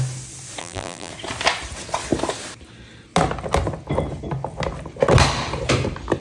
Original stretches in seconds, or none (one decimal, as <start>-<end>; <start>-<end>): 0.0-0.6; 1.1-6.2